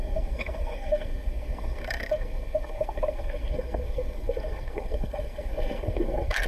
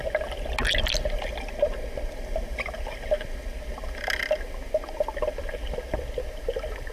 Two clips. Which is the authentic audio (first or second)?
second